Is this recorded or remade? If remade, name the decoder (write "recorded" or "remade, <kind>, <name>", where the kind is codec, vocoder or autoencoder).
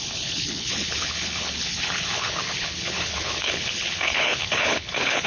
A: remade, codec, HILCodec